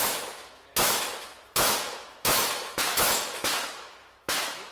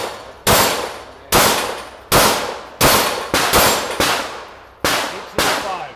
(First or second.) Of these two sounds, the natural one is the second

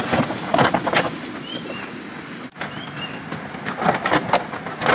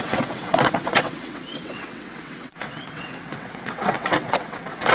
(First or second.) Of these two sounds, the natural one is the first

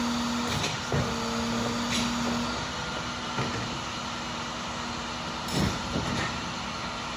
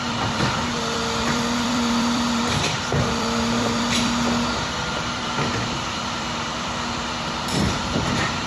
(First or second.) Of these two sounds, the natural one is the first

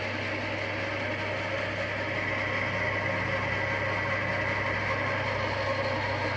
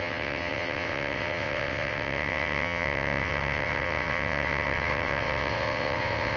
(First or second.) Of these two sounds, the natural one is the first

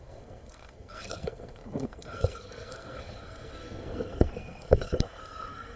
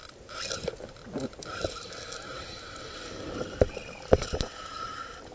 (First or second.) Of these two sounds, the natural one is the second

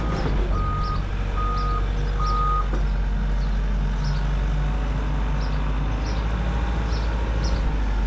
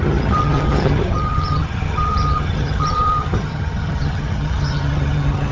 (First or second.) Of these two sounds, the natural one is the first